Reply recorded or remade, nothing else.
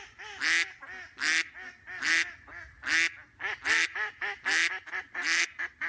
recorded